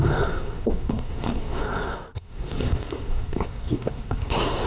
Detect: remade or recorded remade